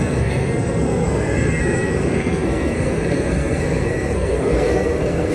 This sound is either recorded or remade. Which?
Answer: remade